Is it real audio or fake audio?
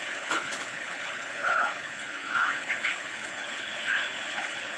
fake